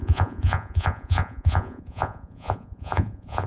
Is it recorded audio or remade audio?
remade